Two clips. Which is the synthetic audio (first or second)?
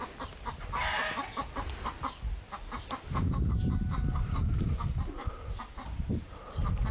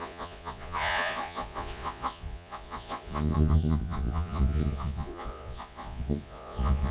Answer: second